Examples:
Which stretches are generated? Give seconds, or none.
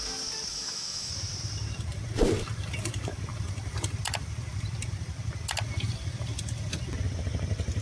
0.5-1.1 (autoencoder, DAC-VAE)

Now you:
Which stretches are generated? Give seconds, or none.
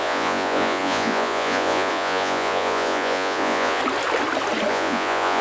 0.0-3.8 (vocoder, Vocos); 4.7-5.4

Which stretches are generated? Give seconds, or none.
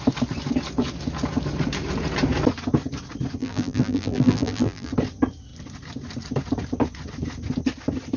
3.4-4.9 (vocoder, BigVGAN v2)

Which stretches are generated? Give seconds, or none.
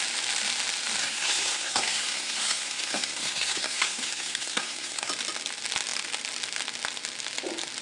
1.0-5.1 (codec, SNAC)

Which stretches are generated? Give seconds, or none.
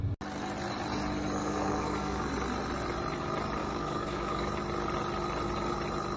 1.4-2.3 (codec, DAC); 3.6-4.5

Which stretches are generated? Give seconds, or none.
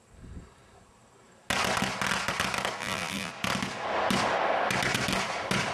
2.8-3.3 (vocoder, BigVGAN v2)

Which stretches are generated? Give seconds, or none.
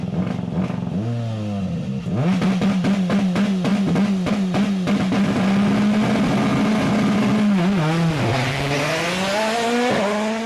none